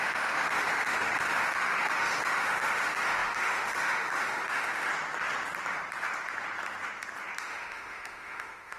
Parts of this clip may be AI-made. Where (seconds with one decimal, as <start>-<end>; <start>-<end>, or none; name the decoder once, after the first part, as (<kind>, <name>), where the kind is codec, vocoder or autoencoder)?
0.0-4.9 (autoencoder, DAC-VAE); 7.4-8.8

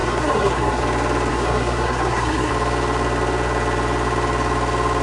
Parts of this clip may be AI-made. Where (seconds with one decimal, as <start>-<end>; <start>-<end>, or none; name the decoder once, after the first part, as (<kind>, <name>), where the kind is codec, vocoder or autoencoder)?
0.0-0.8 (codec, SNAC); 1.3-2.5

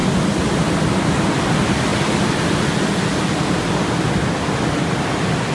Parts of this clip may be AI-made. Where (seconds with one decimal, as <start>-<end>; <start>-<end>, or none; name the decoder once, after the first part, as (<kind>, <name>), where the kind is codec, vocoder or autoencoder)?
none

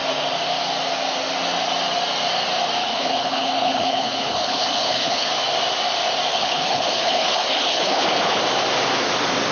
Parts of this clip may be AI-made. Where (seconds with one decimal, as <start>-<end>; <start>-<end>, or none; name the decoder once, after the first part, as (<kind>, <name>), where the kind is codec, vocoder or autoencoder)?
2.8-5.3 (codec, HILCodec); 6.3-8.4

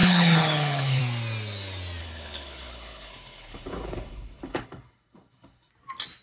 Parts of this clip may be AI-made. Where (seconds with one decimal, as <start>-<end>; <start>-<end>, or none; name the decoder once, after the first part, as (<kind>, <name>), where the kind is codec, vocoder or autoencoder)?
0.0-1.0 (codec, HILCodec); 2.0-5.7

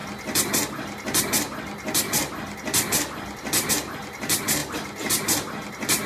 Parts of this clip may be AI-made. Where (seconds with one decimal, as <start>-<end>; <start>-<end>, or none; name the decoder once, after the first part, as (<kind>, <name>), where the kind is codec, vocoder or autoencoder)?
none